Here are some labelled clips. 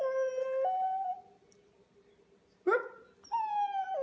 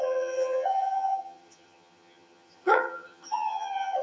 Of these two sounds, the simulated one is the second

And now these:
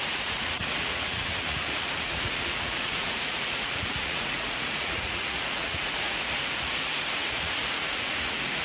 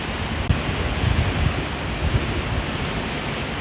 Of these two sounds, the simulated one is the first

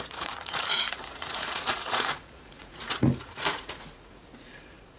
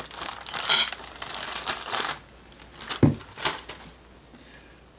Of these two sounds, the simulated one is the first